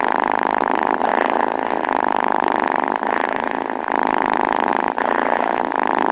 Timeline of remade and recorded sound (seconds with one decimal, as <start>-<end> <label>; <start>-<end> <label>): 0.0-6.1 recorded